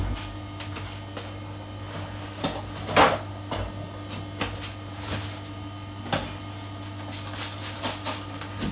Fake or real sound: real